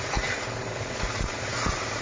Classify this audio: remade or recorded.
remade